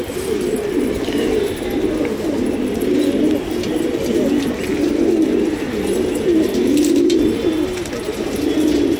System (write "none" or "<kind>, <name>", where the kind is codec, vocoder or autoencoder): none